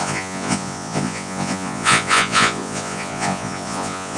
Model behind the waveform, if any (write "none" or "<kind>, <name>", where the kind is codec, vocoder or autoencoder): vocoder, Vocos